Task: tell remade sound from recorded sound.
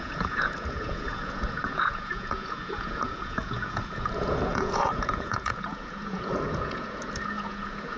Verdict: remade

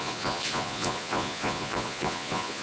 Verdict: remade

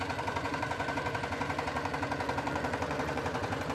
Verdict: remade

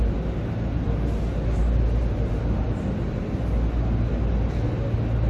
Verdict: recorded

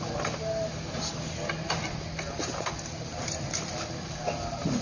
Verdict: recorded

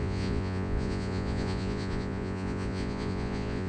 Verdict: remade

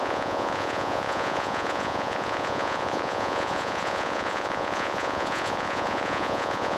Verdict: remade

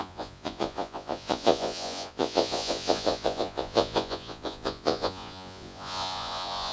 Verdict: remade